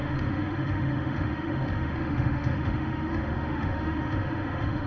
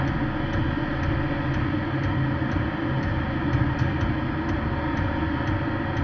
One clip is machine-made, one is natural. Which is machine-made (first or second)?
first